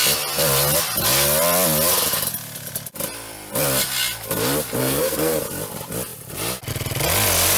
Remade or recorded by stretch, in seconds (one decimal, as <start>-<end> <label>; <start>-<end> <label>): 0.0-4.8 recorded; 4.8-5.4 remade; 5.4-7.6 recorded